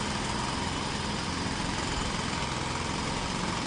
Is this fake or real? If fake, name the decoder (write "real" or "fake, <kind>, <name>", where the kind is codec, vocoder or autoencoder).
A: real